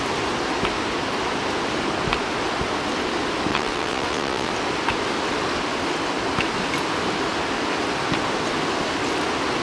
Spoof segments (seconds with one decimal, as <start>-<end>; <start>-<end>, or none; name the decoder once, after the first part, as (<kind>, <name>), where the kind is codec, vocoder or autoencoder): 3.5-4.5 (vocoder, WaveNeXt)